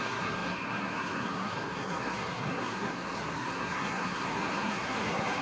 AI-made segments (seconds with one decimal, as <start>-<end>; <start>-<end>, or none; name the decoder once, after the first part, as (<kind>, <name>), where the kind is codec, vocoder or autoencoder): 0.0-5.4 (codec, SNAC)